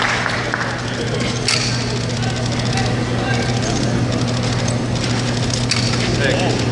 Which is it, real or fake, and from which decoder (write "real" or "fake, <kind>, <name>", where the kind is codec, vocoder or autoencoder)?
real